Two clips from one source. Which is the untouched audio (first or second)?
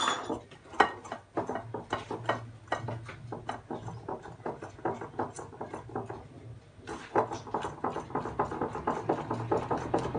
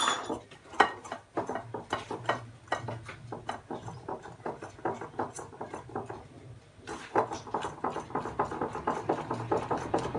first